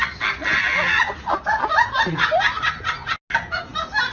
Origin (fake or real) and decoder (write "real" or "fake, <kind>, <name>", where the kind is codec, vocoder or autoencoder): real